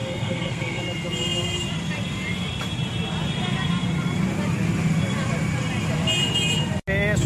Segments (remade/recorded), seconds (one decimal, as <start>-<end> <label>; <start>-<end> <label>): 0.0-0.8 remade; 0.8-7.3 recorded